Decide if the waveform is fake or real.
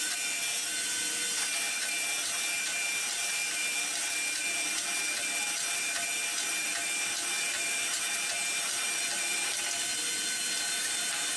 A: fake